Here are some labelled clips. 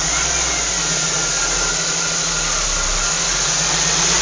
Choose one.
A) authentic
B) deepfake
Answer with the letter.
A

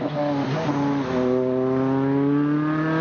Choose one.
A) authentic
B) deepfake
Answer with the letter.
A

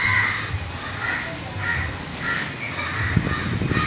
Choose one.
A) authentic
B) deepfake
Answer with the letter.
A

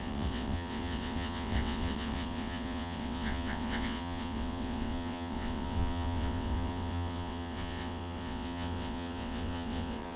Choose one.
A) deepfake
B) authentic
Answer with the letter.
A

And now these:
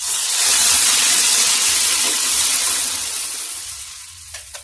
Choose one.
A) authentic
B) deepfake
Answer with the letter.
B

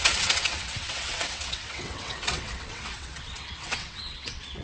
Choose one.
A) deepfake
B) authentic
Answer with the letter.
A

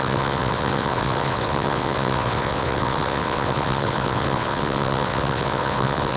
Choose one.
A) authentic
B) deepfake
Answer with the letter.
B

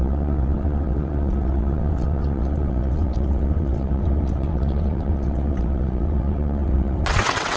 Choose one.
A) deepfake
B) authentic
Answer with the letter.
A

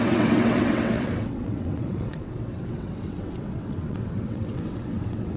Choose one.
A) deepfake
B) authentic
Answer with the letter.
A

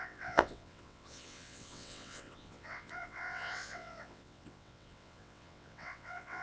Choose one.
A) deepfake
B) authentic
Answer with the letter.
A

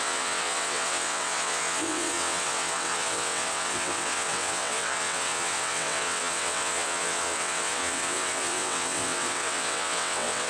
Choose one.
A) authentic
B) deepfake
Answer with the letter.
B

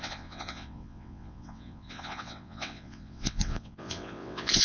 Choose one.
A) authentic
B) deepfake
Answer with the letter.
B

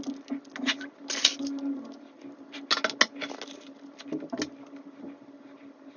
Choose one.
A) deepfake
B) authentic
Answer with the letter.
B